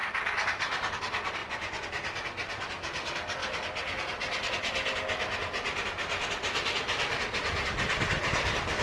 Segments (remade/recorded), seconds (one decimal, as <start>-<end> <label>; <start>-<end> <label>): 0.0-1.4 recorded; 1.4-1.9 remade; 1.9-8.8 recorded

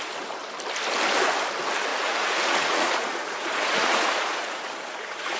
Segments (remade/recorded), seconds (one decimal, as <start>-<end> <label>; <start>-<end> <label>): 0.0-1.9 recorded; 1.9-5.4 remade

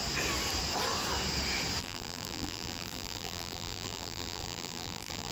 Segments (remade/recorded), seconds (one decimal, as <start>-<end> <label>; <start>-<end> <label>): 0.0-1.8 recorded; 1.8-5.3 remade

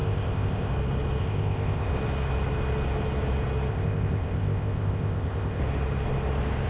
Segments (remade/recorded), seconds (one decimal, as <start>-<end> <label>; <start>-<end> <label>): 0.0-0.7 remade; 0.7-1.2 recorded; 1.2-1.9 remade; 1.9-3.7 recorded; 3.7-5.6 remade; 5.6-6.7 recorded